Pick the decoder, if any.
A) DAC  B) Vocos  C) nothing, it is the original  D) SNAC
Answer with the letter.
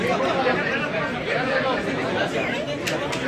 C